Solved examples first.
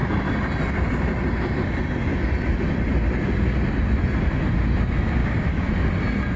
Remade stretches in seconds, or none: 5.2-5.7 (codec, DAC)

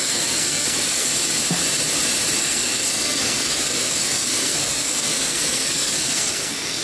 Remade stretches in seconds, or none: 0.0-1.1 (codec, SNAC); 2.4-6.8